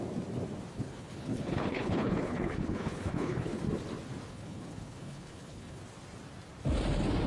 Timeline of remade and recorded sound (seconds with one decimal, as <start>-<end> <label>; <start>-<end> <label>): 0.0-0.7 recorded; 0.7-3.6 remade; 3.6-4.3 recorded; 4.3-5.8 remade; 5.8-7.3 recorded